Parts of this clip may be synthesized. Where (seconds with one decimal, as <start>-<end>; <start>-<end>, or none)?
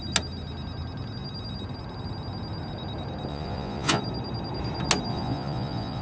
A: 3.3-4.0; 5.1-6.0